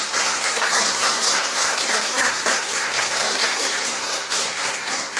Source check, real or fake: fake